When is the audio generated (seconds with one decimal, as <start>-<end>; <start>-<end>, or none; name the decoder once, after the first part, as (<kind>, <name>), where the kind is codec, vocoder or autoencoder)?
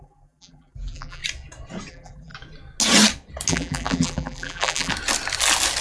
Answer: 0.0-1.2 (vocoder, BigVGAN v2); 1.9-2.3; 3.5-4.9